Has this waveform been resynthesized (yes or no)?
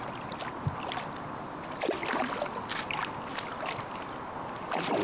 no